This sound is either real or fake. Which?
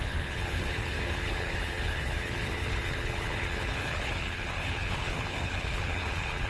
fake